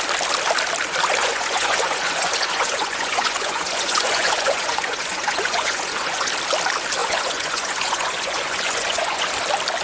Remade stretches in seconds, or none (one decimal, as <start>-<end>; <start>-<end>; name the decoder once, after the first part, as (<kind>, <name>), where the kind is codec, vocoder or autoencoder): 1.2-6.3 (vocoder, Vocos); 7.0-9.3